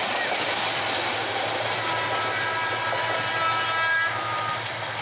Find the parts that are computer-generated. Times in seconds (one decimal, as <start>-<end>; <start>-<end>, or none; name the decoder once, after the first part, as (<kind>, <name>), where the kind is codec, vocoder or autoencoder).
none